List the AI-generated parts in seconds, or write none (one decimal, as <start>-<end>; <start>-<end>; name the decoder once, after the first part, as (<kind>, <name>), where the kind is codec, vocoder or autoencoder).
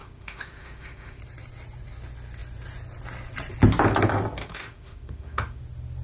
0.0-1.2 (autoencoder, DAC-VAE); 4.4-5.6